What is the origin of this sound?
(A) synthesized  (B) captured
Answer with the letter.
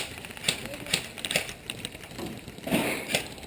B